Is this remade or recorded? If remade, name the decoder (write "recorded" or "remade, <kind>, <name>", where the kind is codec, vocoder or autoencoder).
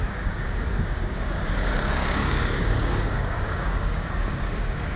remade, codec, DAC